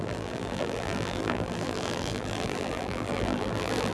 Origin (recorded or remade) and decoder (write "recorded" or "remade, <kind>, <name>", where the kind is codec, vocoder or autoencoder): remade, vocoder, BigVGAN v2